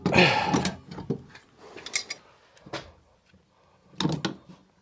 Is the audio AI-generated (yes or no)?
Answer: no